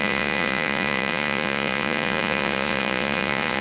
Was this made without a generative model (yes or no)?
no